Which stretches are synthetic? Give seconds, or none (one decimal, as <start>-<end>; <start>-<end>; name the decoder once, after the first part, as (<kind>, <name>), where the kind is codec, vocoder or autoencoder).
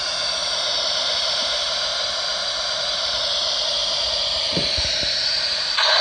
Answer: 0.0-1.9 (vocoder, BigVGAN v2); 2.5-3.8; 4.4-6.0